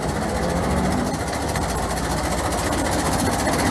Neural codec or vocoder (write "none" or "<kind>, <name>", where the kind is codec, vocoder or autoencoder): none